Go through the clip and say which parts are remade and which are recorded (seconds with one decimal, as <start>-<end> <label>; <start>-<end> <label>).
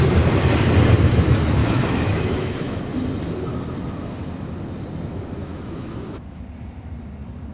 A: 0.0-1.6 recorded; 1.6-2.8 remade; 2.8-5.4 recorded; 5.4-6.4 remade; 6.4-7.5 recorded